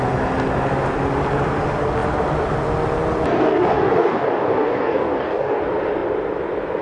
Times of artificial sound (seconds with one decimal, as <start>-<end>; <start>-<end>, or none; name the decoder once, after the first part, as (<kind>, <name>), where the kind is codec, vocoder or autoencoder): 3.4-5.6 (codec, DAC)